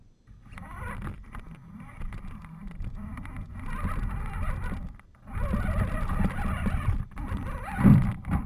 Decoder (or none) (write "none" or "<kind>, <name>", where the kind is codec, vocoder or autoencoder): none